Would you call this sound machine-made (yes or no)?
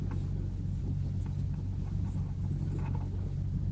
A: no